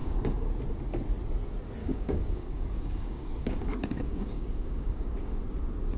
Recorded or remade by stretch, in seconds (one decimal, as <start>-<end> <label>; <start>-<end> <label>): 0.0-0.5 remade; 0.5-1.8 recorded; 1.8-5.4 remade; 5.4-6.0 recorded